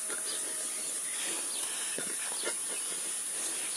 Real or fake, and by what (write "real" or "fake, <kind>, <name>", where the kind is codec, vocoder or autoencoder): real